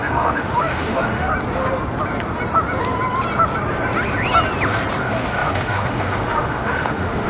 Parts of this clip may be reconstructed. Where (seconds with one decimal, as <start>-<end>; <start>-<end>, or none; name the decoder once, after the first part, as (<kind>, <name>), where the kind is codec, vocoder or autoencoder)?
0.0-1.3 (autoencoder, DAC-VAE); 5.0-7.3